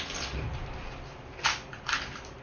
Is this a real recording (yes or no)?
yes